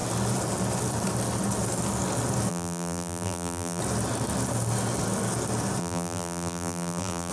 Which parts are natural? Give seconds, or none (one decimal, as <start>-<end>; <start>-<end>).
0.0-2.5; 3.8-5.8